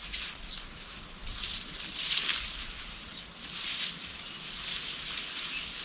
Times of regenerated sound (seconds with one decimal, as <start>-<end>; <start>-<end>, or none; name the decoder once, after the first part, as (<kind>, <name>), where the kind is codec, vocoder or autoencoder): none